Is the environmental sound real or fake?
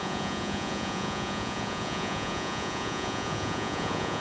fake